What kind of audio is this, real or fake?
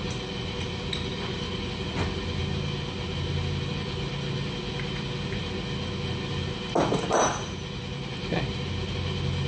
real